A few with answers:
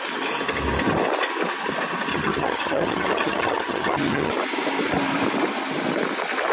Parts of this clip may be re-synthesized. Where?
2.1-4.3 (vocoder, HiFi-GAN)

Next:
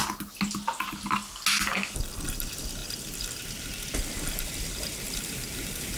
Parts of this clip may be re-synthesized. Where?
none

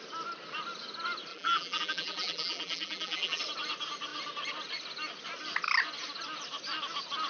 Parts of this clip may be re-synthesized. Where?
1.3-3.4 (vocoder, BigVGAN v2)

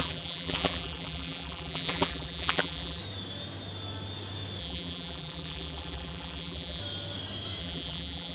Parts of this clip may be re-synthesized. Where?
0.0-3.0 (vocoder, BigVGAN v2); 4.6-6.8; 7.6-8.3